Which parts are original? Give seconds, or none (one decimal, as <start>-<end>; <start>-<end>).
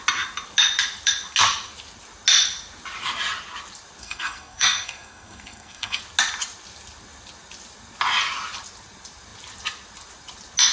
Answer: 0.0-4.0; 6.0-10.7